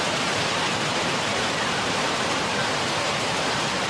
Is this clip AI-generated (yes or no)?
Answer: yes